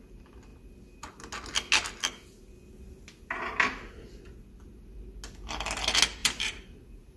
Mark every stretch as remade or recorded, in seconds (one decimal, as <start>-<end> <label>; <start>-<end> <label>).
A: 0.0-6.2 recorded; 6.2-7.2 remade